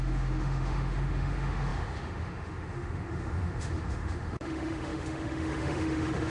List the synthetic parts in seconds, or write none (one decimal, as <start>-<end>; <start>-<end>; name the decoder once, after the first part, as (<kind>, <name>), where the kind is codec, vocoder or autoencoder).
0.0-6.3 (autoencoder, DAC-VAE)